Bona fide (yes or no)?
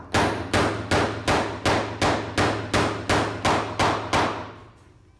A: yes